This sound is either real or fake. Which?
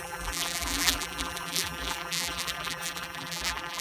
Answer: fake